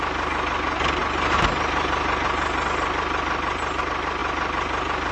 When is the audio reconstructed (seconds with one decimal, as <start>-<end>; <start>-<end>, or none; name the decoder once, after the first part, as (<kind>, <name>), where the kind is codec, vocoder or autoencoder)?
none